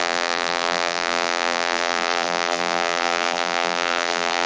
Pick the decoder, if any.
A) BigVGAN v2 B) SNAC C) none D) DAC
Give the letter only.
A